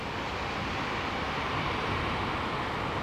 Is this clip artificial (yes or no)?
no